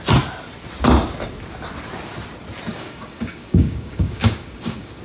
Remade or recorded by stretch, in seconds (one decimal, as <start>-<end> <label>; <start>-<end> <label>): 0.0-2.7 recorded; 2.7-5.0 remade